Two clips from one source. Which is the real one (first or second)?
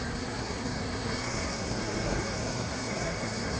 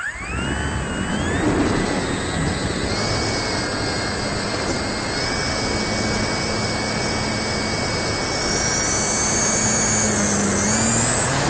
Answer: second